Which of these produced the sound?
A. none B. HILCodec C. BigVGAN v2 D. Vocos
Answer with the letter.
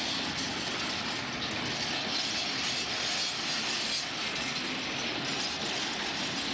A